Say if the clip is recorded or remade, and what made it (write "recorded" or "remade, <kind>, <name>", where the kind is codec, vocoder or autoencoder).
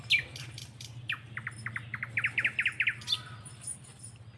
remade, vocoder, BigVGAN v2